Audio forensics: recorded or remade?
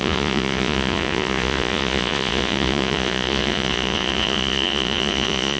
remade